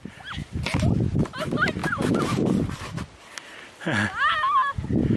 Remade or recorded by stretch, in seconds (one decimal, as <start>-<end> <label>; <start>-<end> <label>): 0.0-5.2 recorded